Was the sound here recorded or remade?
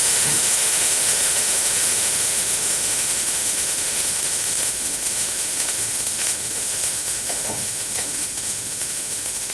remade